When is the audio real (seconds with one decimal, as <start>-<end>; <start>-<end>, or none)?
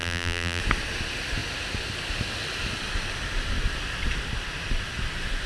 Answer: 0.6-5.5